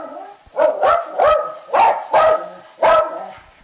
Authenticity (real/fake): fake